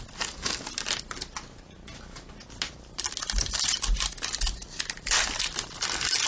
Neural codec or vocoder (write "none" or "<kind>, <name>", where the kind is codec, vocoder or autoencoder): none